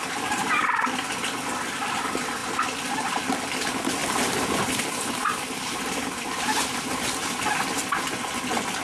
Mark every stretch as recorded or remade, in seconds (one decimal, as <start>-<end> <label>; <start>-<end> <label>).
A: 0.0-5.3 recorded; 5.3-7.5 remade; 7.5-8.8 recorded